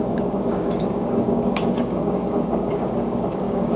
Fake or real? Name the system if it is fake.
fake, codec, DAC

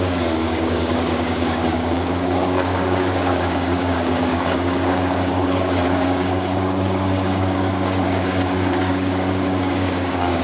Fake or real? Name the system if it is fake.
fake, codec, DAC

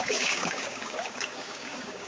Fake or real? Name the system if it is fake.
fake, codec, DAC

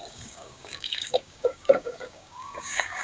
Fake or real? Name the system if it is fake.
fake, codec, DAC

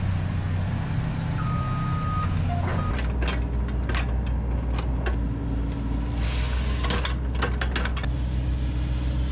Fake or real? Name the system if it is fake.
real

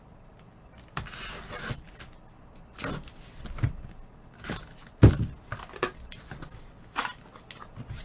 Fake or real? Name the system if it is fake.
real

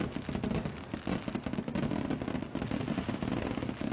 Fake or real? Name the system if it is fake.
real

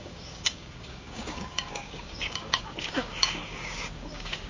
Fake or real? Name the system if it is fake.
fake, codec, DAC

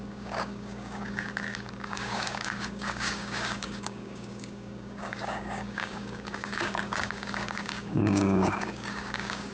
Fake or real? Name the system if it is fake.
fake, codec, DAC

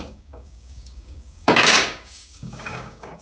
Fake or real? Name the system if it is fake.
fake, codec, DAC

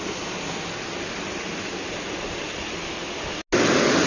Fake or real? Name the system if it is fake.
real